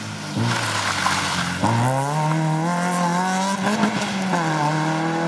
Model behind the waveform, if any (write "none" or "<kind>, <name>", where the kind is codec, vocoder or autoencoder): none